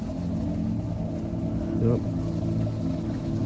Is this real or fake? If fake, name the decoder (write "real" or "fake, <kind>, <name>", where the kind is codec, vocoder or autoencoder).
real